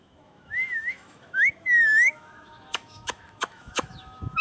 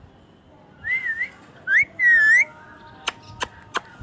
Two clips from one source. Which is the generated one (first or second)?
first